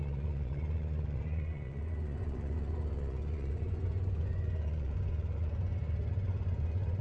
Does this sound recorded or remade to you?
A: remade